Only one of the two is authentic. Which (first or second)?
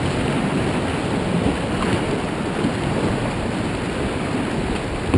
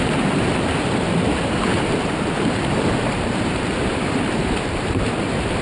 first